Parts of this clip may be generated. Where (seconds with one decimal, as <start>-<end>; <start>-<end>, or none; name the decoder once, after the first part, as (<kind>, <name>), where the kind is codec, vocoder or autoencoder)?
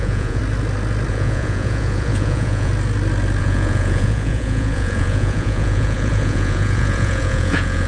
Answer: 0.0-0.4 (vocoder, Vocos); 1.1-2.7; 3.4-7.9